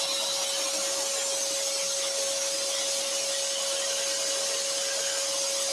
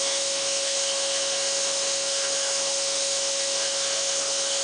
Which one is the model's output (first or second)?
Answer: second